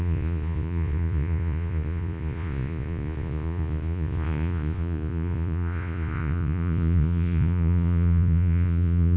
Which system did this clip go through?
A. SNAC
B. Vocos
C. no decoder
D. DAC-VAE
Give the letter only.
B